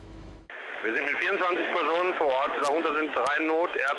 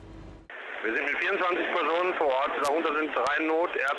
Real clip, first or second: second